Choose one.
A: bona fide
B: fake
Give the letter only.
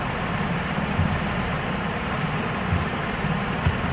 A